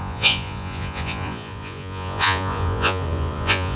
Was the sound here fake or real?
fake